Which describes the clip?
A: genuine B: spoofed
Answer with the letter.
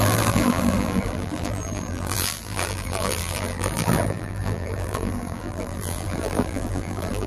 B